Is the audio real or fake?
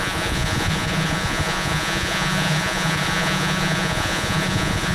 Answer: fake